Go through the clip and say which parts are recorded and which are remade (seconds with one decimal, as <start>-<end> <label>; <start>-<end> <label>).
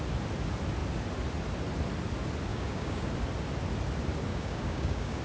0.0-2.5 recorded; 2.5-3.1 remade; 3.1-4.3 recorded; 4.3-5.2 remade